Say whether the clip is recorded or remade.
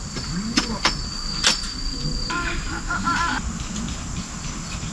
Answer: recorded